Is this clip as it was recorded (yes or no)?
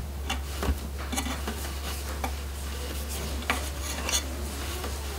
yes